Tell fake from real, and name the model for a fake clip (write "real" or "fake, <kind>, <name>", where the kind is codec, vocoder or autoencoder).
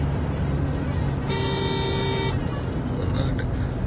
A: real